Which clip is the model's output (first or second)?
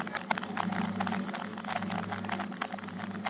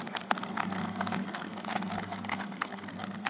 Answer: second